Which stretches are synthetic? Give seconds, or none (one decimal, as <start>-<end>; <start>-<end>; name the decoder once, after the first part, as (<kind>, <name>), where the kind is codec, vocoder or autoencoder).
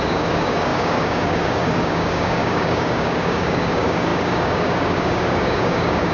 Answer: 0.0-6.1 (codec, DAC)